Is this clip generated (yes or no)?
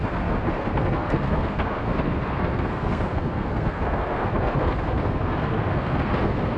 yes